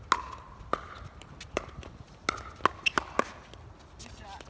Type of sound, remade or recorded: recorded